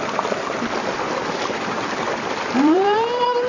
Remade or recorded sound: remade